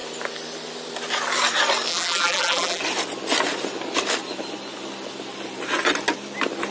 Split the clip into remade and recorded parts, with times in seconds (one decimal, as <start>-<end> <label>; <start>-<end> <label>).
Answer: 0.0-1.9 recorded; 1.9-2.8 remade; 2.8-6.7 recorded